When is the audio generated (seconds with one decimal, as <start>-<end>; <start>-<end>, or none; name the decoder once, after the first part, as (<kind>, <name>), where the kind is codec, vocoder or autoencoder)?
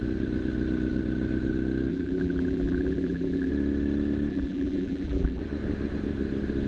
1.9-3.5 (vocoder, BigVGAN v2); 4.3-5.4